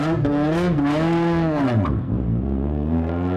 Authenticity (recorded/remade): remade